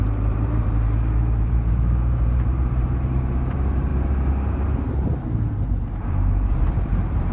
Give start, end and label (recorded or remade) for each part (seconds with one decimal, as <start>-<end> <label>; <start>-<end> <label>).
0.0-3.9 remade; 3.9-6.0 recorded; 6.0-7.3 remade